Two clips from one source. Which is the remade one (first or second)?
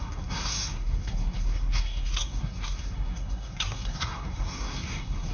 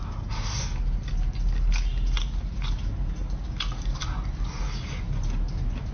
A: first